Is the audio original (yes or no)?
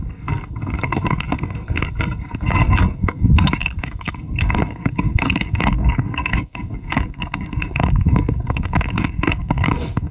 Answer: no